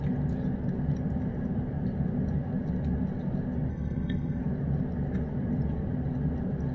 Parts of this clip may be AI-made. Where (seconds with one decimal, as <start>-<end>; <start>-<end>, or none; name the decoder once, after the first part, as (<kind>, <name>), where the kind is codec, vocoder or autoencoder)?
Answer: 3.7-4.4 (codec, SNAC)